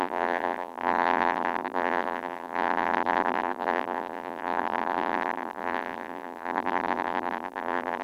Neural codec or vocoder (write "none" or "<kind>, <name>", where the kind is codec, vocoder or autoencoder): vocoder, BigVGAN v2